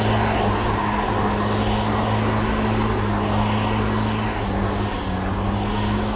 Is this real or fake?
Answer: real